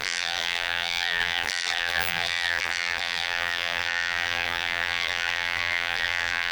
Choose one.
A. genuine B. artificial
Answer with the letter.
B